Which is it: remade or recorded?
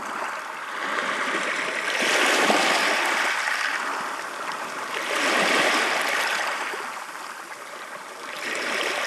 recorded